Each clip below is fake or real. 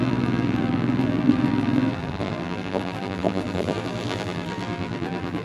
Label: fake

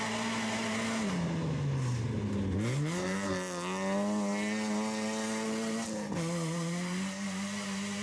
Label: real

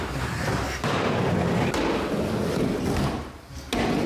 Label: real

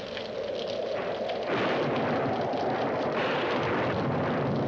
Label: real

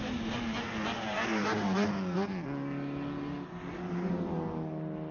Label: real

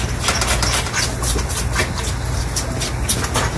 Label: real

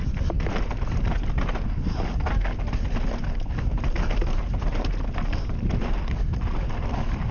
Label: real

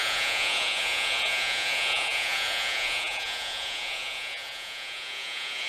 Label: fake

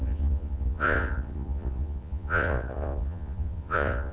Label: fake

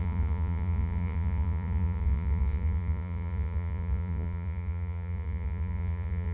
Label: fake